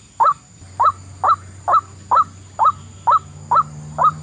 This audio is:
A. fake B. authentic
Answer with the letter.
B